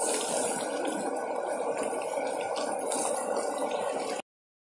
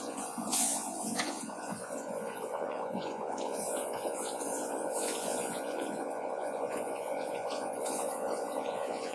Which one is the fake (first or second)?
second